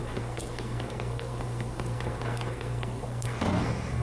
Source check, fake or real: fake